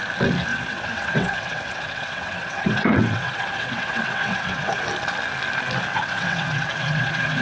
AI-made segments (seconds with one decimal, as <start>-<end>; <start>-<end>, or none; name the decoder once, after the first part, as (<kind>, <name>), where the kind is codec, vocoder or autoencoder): 0.5-4.8 (vocoder, WaveNeXt); 5.9-7.4